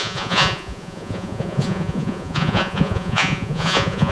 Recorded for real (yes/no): no